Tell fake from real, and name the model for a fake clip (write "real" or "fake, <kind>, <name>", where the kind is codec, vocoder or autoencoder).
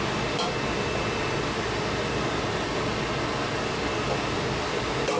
real